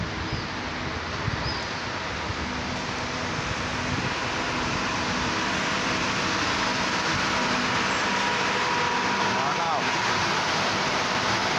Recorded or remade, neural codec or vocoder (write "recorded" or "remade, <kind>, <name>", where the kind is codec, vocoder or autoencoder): recorded